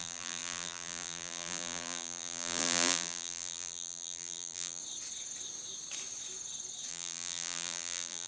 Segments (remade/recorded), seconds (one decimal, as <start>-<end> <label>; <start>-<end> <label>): 0.0-4.8 remade; 4.8-6.9 recorded; 6.9-8.3 remade